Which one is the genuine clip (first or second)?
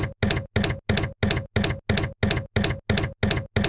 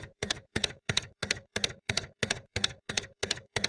first